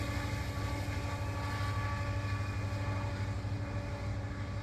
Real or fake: real